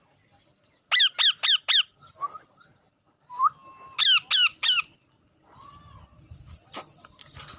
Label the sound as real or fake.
real